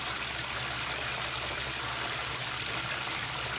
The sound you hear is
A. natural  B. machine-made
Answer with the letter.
A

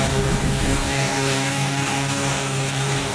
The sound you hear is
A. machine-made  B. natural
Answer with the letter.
A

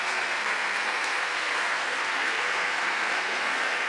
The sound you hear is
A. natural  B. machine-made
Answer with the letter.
B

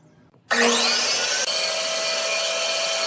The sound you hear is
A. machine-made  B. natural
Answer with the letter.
B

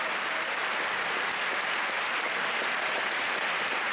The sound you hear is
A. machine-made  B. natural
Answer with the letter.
B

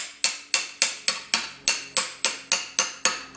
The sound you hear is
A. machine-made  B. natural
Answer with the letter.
B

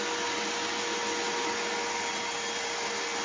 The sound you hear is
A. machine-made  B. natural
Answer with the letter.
B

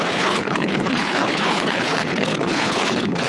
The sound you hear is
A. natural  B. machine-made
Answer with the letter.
B